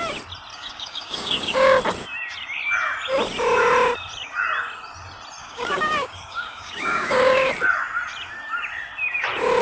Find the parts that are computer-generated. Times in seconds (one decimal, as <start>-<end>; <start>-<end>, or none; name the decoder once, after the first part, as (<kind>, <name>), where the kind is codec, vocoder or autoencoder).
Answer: 0.5-1.8 (codec, DAC); 5.4-7.5